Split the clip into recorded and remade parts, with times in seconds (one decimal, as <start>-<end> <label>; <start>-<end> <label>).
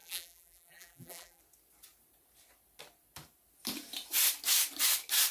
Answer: 0.0-1.4 remade; 1.4-5.3 recorded